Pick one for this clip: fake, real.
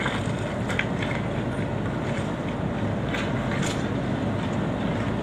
real